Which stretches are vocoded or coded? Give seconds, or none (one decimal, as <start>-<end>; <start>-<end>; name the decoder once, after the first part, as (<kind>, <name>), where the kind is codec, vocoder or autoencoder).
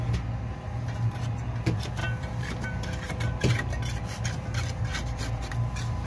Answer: 2.0-3.8 (vocoder, BigVGAN v2); 4.9-5.5